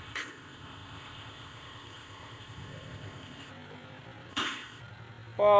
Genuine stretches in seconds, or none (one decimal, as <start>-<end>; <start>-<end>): 3.5-4.3; 4.8-5.6